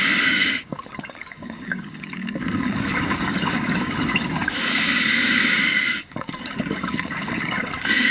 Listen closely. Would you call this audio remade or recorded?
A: remade